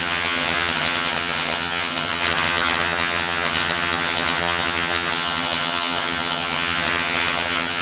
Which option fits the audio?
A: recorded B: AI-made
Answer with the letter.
B